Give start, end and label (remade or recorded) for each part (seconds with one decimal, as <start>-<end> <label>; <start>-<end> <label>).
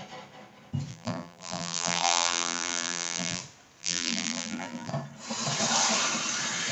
0.0-0.9 recorded; 0.9-3.4 remade; 3.4-3.8 recorded; 3.8-4.9 remade; 4.9-6.7 recorded